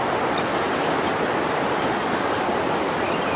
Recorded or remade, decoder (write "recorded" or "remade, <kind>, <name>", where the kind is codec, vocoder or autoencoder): recorded